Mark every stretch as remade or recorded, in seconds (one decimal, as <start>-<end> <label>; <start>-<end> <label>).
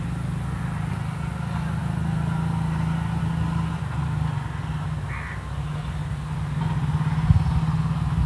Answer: 0.0-8.3 recorded